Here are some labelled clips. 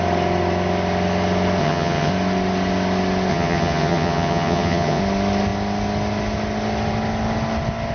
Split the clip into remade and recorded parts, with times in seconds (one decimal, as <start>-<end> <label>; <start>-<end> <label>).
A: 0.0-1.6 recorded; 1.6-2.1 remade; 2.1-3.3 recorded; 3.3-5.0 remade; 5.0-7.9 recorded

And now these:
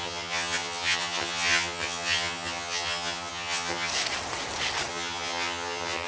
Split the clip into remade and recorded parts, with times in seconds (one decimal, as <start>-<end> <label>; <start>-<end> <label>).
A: 0.0-3.9 remade; 3.9-4.9 recorded; 4.9-6.1 remade

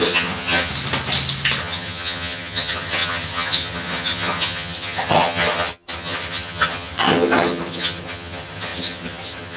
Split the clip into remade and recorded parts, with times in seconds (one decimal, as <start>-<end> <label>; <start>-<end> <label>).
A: 0.0-0.7 remade; 0.7-1.6 recorded; 1.6-9.6 remade

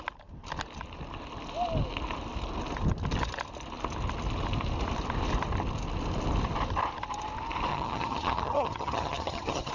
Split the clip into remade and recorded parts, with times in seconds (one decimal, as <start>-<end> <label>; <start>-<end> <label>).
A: 0.0-7.7 recorded; 7.7-9.7 remade

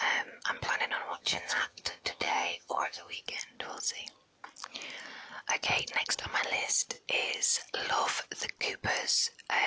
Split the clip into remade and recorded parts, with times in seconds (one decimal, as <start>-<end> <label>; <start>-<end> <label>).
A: 0.0-1.1 recorded; 1.1-3.2 remade; 3.2-9.7 recorded

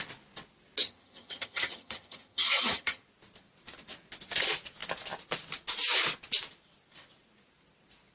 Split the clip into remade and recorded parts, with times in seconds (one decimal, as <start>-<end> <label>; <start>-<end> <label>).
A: 0.0-0.8 recorded; 0.8-3.0 remade; 3.0-8.1 recorded

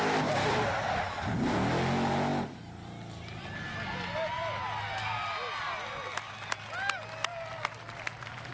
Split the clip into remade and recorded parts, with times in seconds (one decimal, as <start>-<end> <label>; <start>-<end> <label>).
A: 0.0-8.5 recorded

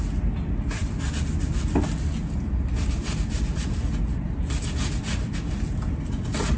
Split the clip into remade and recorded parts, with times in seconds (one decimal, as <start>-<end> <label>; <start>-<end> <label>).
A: 0.0-6.6 recorded